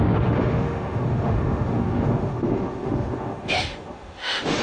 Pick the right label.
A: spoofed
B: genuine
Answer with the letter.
A